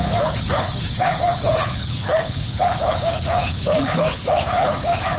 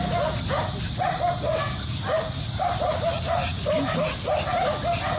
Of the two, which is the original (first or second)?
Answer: second